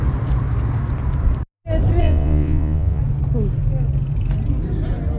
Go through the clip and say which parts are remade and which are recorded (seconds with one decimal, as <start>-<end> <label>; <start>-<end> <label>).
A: 0.0-2.0 recorded; 2.0-3.0 remade; 3.0-5.2 recorded